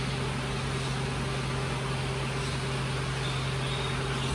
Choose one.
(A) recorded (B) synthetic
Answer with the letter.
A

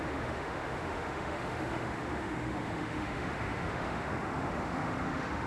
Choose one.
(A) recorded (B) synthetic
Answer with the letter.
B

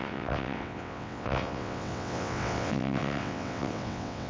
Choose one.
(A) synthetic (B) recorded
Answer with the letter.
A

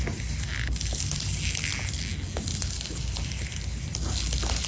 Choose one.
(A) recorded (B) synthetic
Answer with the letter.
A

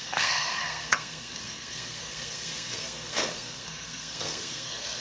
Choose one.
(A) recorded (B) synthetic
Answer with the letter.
B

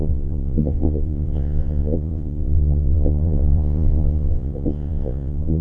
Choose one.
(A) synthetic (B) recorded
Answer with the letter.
A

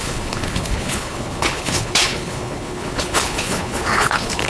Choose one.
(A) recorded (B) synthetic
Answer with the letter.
B